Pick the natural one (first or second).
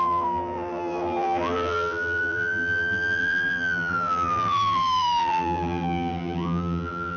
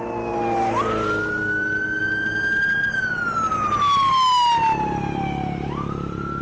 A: second